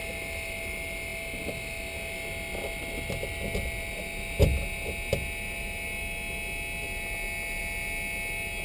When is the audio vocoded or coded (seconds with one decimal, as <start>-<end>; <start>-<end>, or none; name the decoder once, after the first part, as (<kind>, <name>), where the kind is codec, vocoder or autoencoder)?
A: none